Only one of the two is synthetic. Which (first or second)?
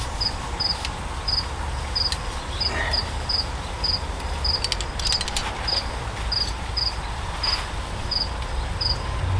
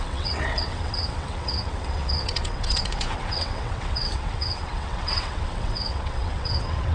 second